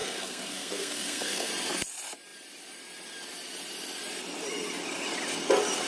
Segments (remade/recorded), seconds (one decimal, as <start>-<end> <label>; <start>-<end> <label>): 0.0-1.5 remade; 1.5-5.9 recorded